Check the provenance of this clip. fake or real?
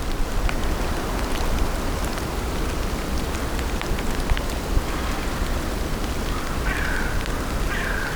fake